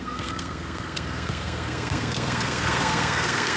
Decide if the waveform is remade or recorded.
remade